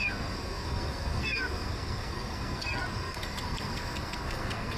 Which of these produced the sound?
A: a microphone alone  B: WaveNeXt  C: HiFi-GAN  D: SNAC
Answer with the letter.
D